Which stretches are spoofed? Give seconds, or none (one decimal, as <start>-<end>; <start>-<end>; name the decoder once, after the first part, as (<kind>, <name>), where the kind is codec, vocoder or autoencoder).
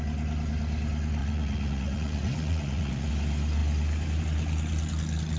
1.2-3.1 (vocoder, Vocos)